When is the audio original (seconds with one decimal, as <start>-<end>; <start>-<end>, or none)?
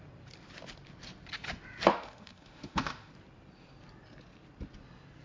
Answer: 0.0-1.9; 3.1-5.2